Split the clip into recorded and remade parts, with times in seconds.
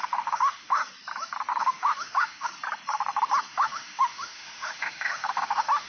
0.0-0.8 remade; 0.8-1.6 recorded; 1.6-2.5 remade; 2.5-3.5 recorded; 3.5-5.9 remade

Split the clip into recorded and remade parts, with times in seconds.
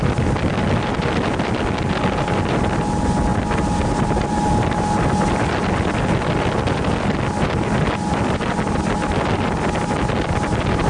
0.0-10.9 recorded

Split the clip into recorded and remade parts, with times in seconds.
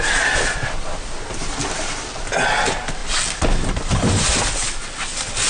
0.0-3.0 recorded; 3.0-3.7 remade; 3.7-5.5 recorded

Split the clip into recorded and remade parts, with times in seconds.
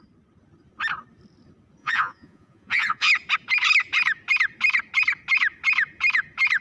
0.0-1.8 recorded; 1.8-3.1 remade; 3.1-6.6 recorded